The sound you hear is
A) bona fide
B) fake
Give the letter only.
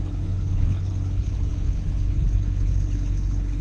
B